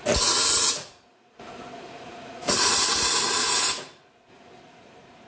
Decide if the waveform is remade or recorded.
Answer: remade